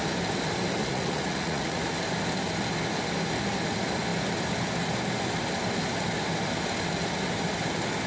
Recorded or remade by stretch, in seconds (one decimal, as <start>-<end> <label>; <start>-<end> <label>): 0.0-0.8 recorded; 0.8-1.8 remade; 1.8-8.1 recorded